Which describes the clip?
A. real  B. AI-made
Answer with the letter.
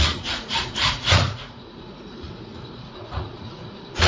B